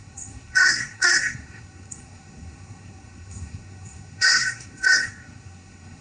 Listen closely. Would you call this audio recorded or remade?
remade